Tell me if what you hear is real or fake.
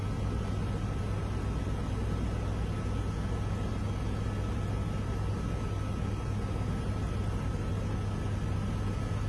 real